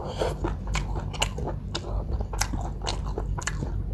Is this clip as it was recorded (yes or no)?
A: yes